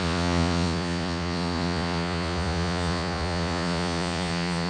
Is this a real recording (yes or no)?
no